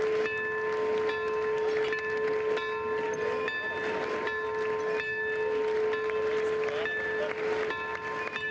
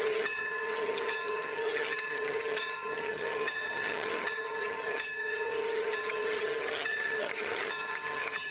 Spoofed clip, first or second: second